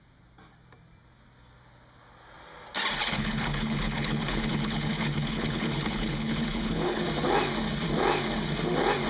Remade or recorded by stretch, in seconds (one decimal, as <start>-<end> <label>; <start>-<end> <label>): 0.0-3.0 recorded; 3.0-7.0 remade; 7.0-9.1 recorded